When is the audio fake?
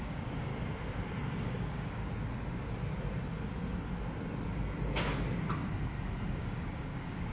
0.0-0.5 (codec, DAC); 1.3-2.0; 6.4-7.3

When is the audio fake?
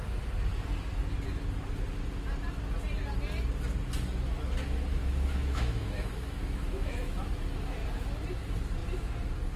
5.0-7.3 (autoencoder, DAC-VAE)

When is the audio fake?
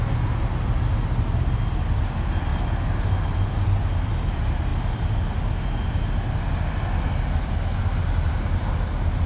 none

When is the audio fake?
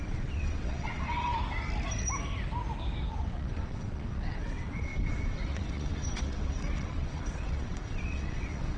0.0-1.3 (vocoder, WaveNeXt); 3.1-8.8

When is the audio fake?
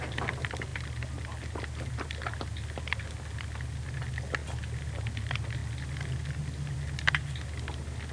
none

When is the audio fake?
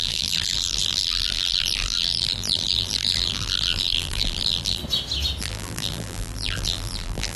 0.0-4.8 (vocoder, BigVGAN v2); 5.4-7.4